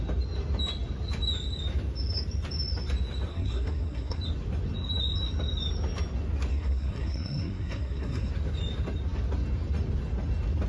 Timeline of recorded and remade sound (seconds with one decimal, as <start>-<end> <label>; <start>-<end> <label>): 0.0-3.3 recorded; 3.3-4.2 remade; 4.2-6.5 recorded; 6.5-8.3 remade; 8.3-10.7 recorded

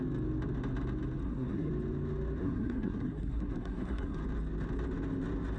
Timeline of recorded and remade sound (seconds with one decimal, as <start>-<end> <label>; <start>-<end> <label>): 0.0-1.2 recorded; 1.2-1.7 remade; 1.7-2.4 recorded; 2.4-4.2 remade; 4.2-5.6 recorded

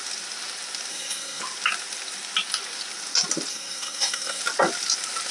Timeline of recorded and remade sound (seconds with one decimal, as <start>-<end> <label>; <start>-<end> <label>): 0.0-0.9 recorded; 0.9-1.4 remade; 1.4-3.5 recorded; 3.5-4.4 remade; 4.4-5.3 recorded

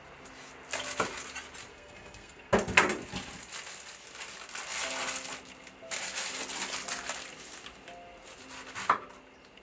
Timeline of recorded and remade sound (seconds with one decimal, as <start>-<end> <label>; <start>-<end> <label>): 0.0-1.7 recorded; 1.7-2.5 remade; 2.5-9.6 recorded

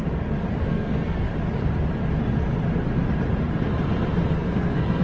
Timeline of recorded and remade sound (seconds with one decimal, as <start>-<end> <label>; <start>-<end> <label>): 0.0-0.6 recorded; 0.6-1.3 remade; 1.3-4.3 recorded; 4.3-5.0 remade

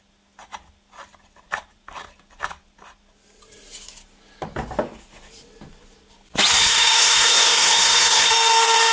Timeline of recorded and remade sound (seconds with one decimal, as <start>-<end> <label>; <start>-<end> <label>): 0.0-6.6 recorded; 6.6-8.3 remade; 8.3-8.9 recorded

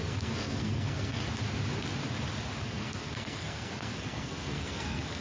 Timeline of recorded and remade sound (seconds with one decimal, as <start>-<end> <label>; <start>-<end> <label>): 0.0-1.2 remade; 1.2-2.6 recorded; 2.6-5.2 remade

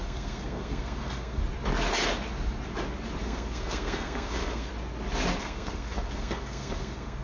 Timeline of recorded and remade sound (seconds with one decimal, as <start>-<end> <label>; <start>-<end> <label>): 0.0-1.4 remade; 1.4-3.2 recorded; 3.2-4.7 remade; 4.7-5.4 recorded; 5.4-7.2 remade